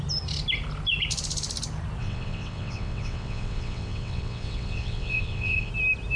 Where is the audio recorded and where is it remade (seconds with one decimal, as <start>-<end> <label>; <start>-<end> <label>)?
0.0-2.0 recorded; 2.0-5.7 remade; 5.7-6.2 recorded

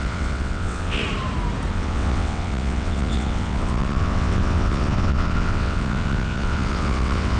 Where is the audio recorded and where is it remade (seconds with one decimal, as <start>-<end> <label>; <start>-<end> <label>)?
0.0-1.0 remade; 1.0-1.7 recorded; 1.7-7.4 remade